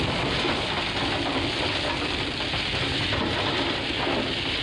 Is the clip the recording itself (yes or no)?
yes